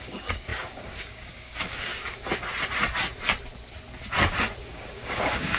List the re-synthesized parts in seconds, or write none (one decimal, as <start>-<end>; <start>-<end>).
0.0-1.9; 4.7-5.6